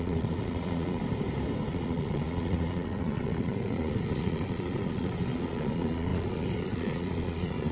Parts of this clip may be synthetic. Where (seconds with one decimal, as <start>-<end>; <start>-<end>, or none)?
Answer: 0.0-1.0; 1.7-7.7